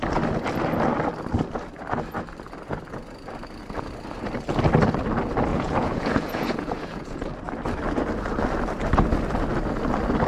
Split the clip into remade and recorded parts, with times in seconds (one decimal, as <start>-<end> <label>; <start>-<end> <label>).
0.0-5.5 recorded; 5.5-7.2 remade; 7.2-10.3 recorded